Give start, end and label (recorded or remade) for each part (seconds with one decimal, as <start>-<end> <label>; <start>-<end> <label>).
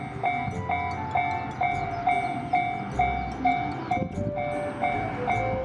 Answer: 0.0-5.6 recorded